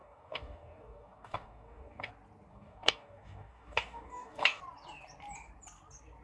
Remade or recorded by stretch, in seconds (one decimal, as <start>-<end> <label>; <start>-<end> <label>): 0.0-2.1 remade; 2.1-2.5 recorded; 2.5-4.6 remade; 4.6-6.2 recorded